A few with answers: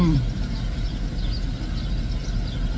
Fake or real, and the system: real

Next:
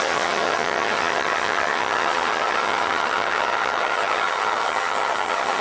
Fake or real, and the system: fake, vocoder, HiFi-GAN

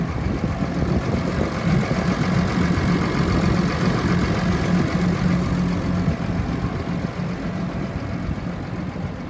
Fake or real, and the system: real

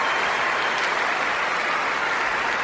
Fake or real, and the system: real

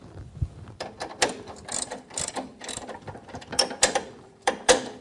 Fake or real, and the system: fake, vocoder, BigVGAN v2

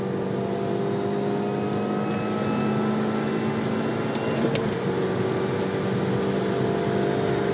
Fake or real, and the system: real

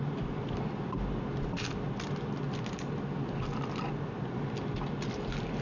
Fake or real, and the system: real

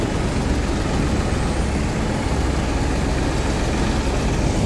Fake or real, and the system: real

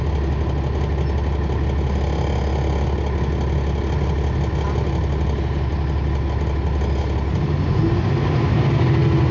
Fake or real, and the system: real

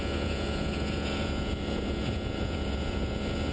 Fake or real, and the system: fake, vocoder, Vocos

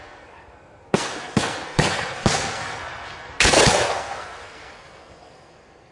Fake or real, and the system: fake, codec, SNAC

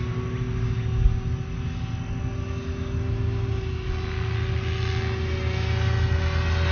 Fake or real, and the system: real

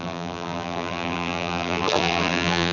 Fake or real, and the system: fake, vocoder, BigVGAN v2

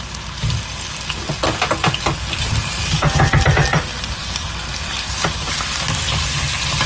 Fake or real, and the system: real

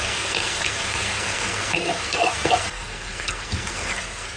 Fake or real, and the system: fake, codec, SNAC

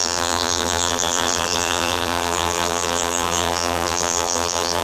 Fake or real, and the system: fake, vocoder, BigVGAN v2